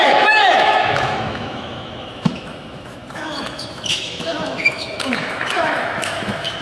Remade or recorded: remade